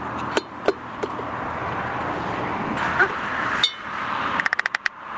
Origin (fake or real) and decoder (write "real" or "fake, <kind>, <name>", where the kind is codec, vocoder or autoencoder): real